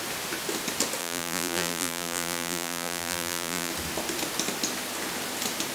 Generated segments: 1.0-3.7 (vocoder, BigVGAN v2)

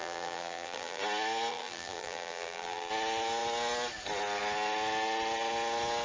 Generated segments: 0.0-1.0 (vocoder, BigVGAN v2); 1.5-2.9